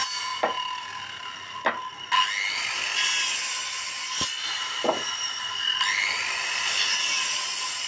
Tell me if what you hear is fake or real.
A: real